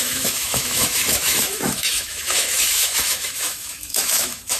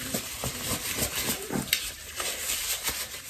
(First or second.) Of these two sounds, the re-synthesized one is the first